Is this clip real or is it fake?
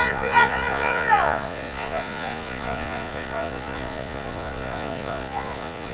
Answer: fake